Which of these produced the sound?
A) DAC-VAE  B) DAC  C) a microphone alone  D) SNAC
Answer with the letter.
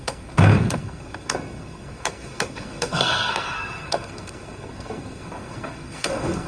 D